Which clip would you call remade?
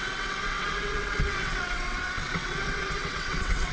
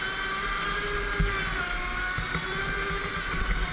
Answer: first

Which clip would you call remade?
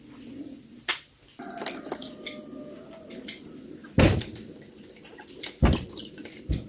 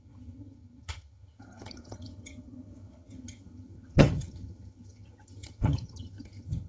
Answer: second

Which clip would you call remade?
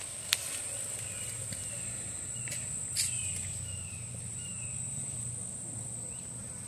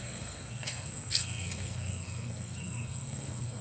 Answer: second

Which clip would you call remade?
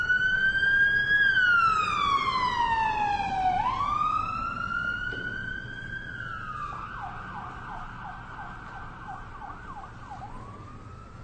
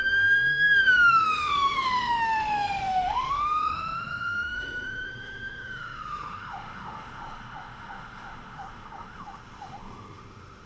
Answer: second